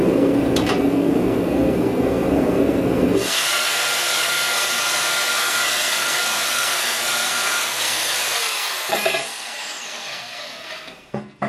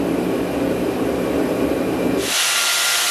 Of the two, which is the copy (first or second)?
first